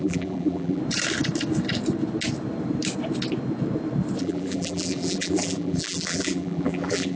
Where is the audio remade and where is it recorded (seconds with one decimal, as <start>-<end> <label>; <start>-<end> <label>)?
0.0-0.8 remade; 0.8-4.2 recorded; 4.2-7.2 remade